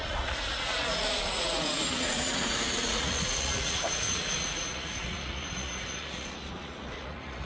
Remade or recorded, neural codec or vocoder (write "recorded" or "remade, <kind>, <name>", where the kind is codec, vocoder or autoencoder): remade, vocoder, Vocos